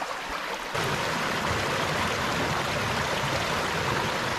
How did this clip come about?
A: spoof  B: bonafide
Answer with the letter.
B